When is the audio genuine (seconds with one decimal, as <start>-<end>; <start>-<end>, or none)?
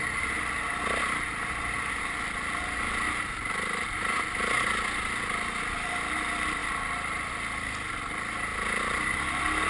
0.0-9.7